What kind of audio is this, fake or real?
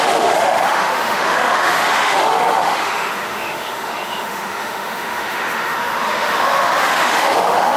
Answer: fake